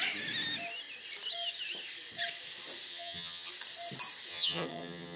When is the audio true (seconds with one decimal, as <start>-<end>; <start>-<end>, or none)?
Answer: 0.0-2.9; 3.5-4.3